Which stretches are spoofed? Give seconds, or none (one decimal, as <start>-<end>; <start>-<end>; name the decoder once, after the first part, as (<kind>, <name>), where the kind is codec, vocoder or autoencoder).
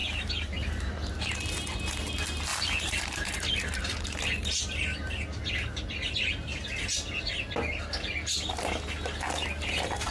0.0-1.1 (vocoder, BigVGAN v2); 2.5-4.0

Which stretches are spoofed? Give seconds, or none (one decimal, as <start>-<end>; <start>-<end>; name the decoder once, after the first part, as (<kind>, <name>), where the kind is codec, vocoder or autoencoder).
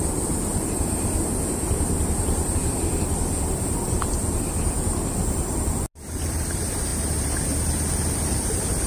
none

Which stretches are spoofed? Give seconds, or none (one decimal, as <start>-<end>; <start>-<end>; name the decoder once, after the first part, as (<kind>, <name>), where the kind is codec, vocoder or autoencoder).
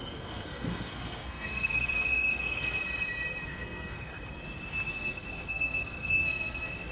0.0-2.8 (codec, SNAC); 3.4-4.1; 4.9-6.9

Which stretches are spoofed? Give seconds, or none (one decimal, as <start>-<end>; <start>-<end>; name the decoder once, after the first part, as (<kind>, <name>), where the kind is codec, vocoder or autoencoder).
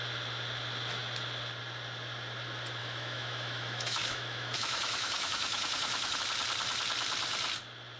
2.8-6.2 (autoencoder, DAC-VAE)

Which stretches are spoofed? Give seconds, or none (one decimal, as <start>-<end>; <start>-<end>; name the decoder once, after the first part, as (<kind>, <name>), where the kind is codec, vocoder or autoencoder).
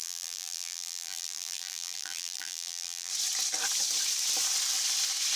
0.0-3.1 (vocoder, BigVGAN v2)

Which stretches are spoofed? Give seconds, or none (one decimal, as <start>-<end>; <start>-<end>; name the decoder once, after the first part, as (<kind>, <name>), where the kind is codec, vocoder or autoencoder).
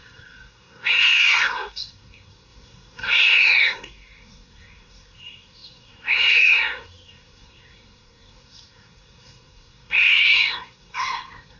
0.0-11.6 (codec, SNAC)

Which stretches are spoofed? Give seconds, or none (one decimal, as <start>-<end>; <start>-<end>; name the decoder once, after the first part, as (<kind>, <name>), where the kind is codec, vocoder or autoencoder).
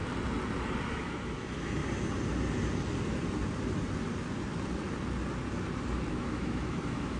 0.9-1.8 (autoencoder, DAC-VAE); 6.1-7.2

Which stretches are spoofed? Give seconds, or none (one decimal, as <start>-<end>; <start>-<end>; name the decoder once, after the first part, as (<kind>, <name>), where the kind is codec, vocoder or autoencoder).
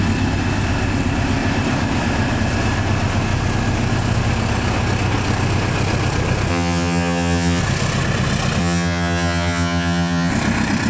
6.5-7.6 (vocoder, HiFi-GAN); 8.6-10.3